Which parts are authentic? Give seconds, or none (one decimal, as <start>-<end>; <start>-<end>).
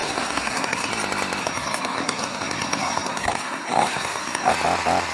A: 0.9-1.4; 4.5-5.1